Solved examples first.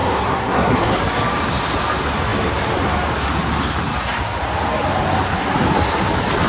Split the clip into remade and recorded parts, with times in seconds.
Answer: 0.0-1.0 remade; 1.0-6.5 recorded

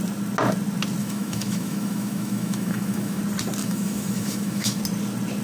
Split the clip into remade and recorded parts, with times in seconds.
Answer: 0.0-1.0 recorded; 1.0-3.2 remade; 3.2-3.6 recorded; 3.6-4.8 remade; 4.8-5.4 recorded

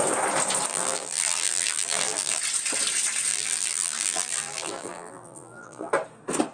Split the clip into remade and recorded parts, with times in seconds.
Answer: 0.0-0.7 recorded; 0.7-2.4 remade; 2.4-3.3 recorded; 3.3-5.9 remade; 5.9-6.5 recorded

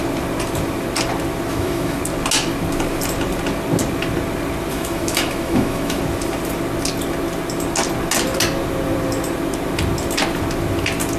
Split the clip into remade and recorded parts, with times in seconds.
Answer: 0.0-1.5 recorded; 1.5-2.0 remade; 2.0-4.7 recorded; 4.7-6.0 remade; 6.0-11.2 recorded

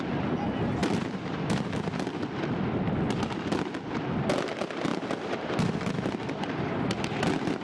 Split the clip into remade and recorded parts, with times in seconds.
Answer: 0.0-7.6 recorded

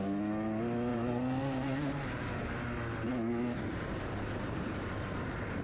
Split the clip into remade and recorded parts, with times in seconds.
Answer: 0.0-0.9 recorded; 0.9-2.5 remade; 2.5-3.7 recorded; 3.7-5.6 remade

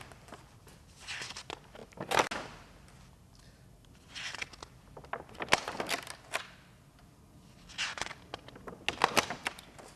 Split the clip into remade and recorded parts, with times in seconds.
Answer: 0.0-10.0 recorded

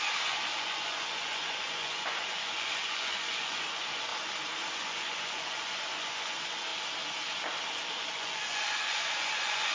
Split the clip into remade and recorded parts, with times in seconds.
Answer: 0.0-4.1 remade; 4.1-4.7 recorded; 4.7-6.7 remade; 6.7-8.0 recorded; 8.0-9.7 remade